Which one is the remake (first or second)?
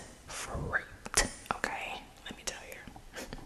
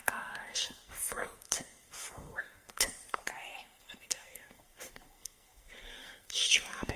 second